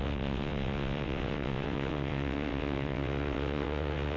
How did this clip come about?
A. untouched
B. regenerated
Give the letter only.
B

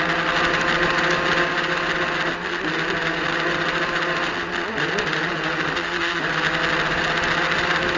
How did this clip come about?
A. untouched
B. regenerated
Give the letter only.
A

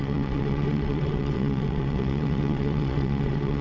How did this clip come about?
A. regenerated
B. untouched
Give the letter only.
A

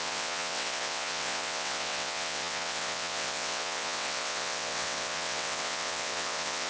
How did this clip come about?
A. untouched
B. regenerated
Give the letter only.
B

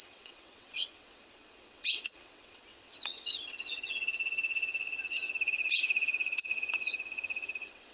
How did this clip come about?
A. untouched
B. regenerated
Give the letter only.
B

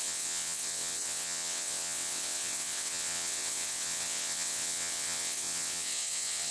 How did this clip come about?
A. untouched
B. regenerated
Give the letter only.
B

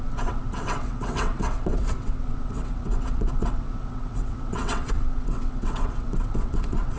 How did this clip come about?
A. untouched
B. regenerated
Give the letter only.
B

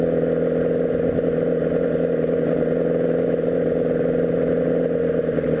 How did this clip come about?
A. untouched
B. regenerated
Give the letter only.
A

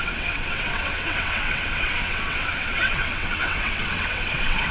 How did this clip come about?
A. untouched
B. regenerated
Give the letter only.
B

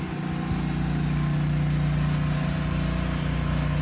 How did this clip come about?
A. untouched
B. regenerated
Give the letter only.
A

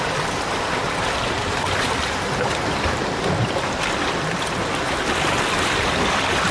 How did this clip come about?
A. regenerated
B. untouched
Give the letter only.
B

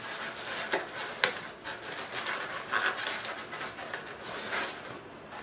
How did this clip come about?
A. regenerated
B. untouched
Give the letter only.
B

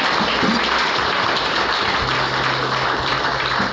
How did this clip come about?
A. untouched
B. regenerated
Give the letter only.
A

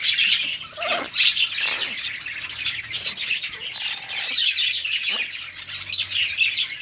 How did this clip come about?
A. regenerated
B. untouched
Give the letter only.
B